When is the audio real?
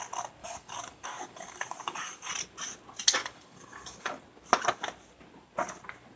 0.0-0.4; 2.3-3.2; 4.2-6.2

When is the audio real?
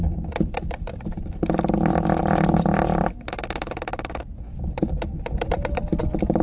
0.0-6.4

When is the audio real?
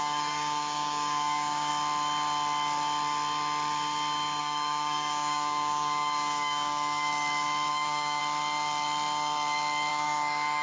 1.7-4.4; 7.1-7.7; 8.2-9.9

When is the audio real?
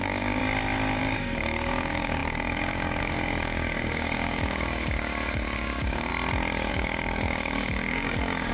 0.4-1.0; 6.1-6.7